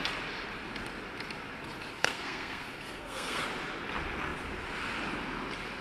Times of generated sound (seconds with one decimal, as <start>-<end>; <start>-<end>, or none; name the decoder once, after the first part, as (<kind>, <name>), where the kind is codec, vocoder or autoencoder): 2.0-3.4 (codec, SNAC)